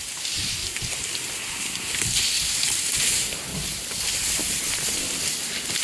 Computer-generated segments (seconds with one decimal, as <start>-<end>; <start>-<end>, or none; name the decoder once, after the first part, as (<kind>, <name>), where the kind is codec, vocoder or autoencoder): 0.6-1.1 (vocoder, BigVGAN v2)